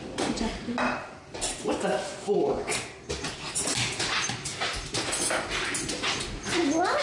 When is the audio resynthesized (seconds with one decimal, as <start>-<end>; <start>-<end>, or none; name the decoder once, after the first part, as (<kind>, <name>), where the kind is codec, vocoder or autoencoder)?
none